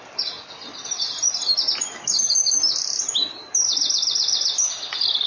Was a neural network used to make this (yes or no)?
no